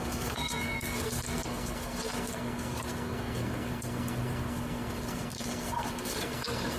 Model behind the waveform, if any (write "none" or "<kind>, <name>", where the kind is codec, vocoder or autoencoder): codec, SNAC